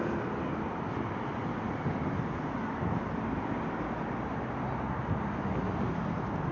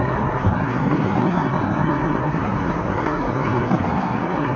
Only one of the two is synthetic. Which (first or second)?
second